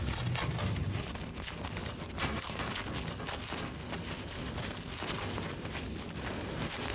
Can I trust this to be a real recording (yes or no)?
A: yes